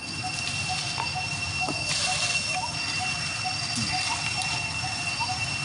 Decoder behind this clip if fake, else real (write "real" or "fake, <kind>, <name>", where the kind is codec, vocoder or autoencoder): real